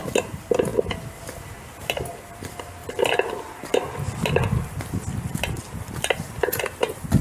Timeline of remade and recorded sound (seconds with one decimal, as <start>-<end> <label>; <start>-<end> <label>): 0.0-7.2 recorded